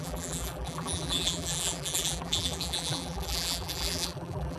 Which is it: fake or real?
fake